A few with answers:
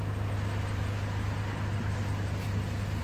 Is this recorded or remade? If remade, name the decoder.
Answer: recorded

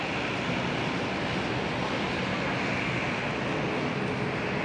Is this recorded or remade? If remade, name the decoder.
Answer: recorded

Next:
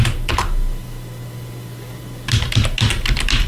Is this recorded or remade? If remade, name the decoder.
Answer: recorded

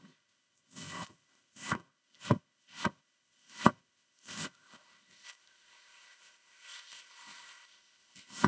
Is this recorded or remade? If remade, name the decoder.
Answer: remade, codec, ZipCodec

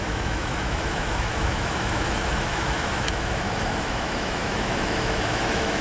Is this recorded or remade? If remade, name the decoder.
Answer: remade, autoencoder, DAC-VAE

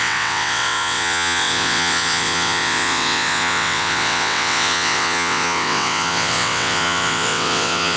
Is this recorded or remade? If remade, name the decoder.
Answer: remade, vocoder, WaveNeXt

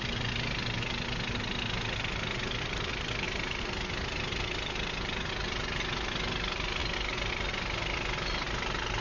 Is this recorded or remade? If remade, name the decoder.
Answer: recorded